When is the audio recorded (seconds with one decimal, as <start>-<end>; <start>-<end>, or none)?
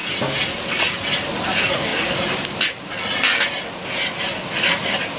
0.0-5.2